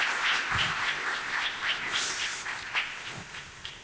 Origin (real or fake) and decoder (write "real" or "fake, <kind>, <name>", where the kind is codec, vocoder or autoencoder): fake, codec, ZipCodec